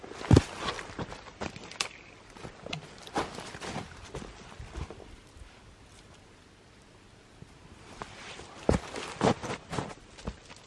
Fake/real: real